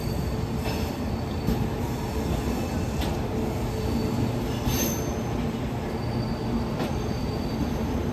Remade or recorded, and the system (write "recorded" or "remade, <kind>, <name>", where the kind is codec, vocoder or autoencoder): recorded